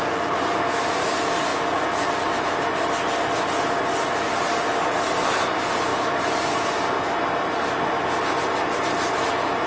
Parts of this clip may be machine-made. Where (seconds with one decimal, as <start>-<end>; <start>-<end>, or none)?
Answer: none